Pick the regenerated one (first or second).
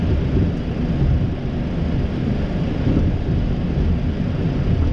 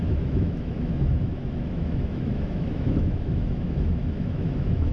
second